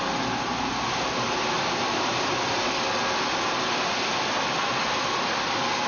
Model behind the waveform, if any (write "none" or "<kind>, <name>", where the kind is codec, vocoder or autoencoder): none